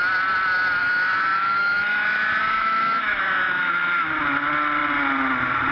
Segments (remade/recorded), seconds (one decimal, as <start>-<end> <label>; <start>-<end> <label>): 0.0-0.8 recorded; 0.8-4.2 remade; 4.2-5.7 recorded